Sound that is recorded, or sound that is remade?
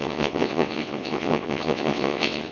remade